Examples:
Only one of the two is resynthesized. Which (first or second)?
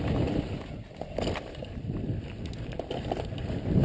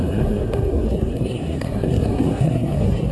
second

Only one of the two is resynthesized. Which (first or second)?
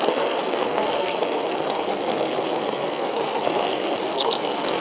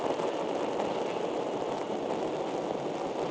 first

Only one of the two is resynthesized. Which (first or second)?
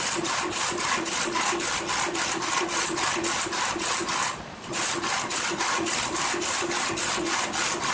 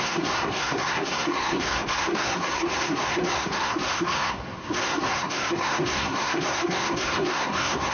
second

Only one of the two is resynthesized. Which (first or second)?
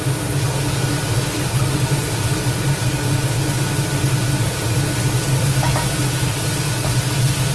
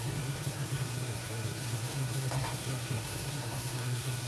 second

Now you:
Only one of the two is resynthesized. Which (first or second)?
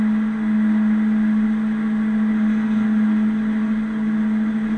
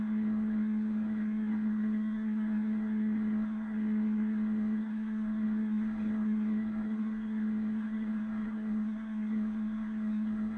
second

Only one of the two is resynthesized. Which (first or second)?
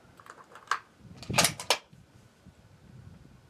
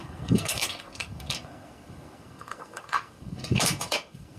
second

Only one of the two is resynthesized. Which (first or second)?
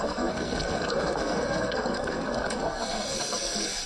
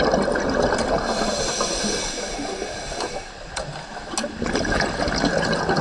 first